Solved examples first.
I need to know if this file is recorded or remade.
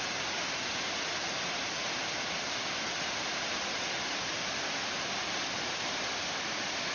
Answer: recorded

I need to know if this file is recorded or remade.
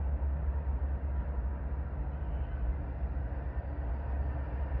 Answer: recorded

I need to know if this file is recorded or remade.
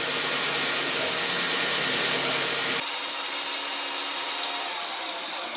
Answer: recorded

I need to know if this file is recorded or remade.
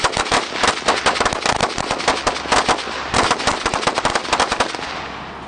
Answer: recorded